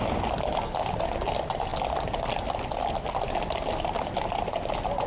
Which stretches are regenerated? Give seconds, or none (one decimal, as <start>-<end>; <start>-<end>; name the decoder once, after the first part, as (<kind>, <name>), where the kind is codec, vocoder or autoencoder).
none